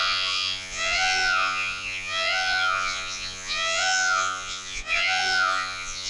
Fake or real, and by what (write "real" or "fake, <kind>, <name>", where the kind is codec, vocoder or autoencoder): fake, vocoder, Vocos